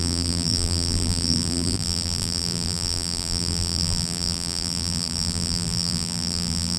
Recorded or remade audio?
remade